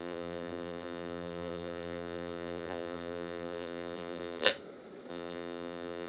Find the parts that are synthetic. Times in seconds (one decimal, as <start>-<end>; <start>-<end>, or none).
0.0-4.5; 5.1-6.1